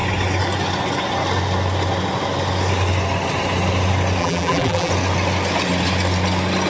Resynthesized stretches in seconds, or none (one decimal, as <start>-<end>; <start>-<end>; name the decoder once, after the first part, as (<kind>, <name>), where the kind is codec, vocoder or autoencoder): 4.2-4.9 (vocoder, BigVGAN v2)

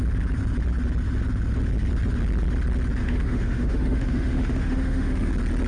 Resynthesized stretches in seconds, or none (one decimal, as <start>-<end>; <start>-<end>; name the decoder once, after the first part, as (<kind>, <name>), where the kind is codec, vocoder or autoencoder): 3.0-5.3 (autoencoder, DAC-VAE)

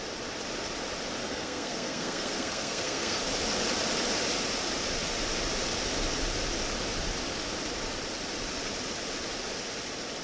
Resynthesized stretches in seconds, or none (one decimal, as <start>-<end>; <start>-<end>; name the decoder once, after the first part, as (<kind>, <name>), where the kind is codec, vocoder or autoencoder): 1.2-3.2 (codec, SNAC)

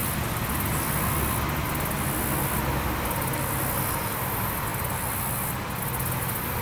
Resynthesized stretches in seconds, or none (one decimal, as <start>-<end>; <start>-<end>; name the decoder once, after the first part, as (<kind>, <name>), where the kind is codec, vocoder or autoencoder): none

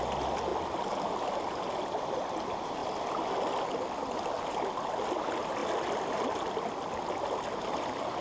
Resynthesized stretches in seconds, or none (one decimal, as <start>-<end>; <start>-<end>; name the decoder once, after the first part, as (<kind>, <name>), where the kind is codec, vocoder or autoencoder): none

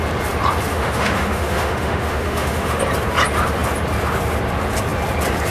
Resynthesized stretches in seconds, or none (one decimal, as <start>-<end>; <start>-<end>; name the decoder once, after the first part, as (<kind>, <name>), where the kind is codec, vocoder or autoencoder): 0.7-2.8 (autoencoder, DAC-VAE)

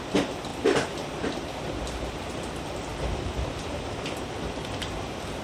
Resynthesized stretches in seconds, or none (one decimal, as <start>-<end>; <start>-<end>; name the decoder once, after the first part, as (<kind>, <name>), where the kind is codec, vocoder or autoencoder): 0.5-2.3 (vocoder, BigVGAN v2); 2.9-3.9

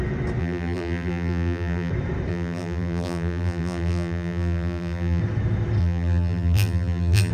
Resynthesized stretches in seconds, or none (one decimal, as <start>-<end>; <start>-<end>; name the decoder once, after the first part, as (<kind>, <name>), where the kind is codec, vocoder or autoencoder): 0.4-1.9 (vocoder, BigVGAN v2); 2.3-5.2; 5.8-7.3